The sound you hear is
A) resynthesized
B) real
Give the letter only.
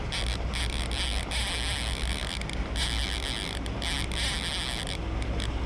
B